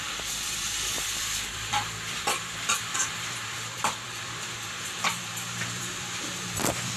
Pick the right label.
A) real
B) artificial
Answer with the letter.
B